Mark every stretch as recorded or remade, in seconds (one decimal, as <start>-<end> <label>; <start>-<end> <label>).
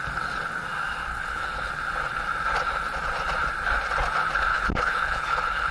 0.0-1.1 recorded; 1.1-1.7 remade; 1.7-4.5 recorded; 4.5-5.7 remade